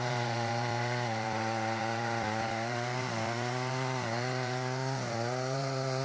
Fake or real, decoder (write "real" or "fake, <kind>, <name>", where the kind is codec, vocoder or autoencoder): fake, vocoder, BigVGAN v2